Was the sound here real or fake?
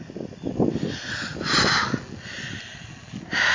real